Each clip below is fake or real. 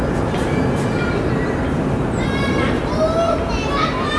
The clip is real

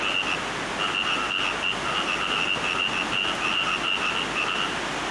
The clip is real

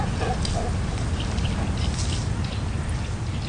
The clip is real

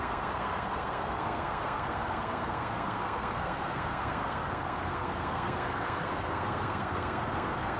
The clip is fake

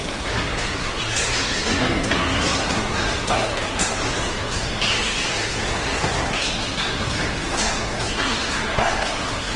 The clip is fake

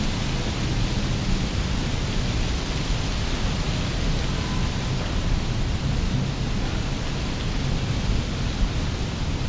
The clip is real